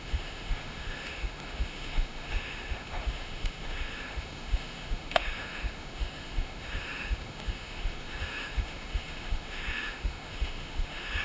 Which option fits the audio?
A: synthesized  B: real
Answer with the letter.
A